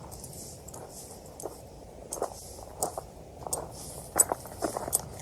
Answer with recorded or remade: recorded